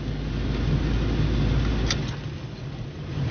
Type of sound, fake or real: real